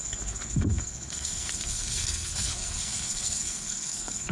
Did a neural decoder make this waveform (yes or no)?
yes